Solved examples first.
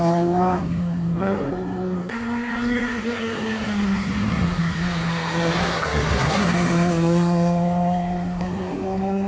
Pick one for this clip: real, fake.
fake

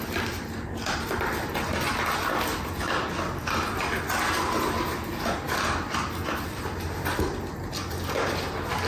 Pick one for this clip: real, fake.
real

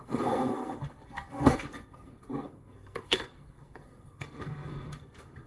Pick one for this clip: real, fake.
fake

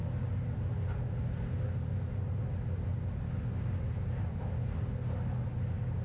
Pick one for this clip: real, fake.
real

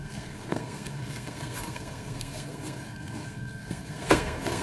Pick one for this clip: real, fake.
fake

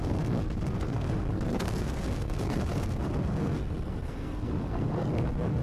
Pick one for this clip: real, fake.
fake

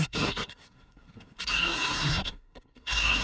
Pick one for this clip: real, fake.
fake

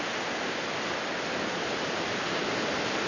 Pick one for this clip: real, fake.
real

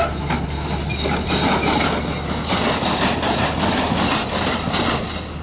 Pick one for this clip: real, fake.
real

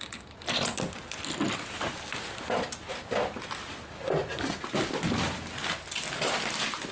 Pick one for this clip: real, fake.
real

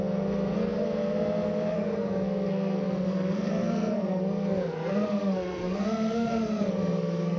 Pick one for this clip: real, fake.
fake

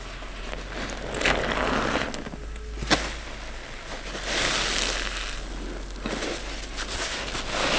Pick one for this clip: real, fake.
real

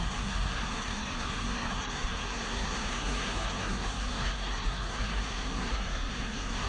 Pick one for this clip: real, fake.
fake